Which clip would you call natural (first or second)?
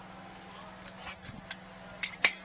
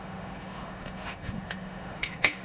first